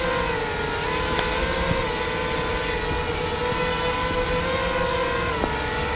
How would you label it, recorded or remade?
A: recorded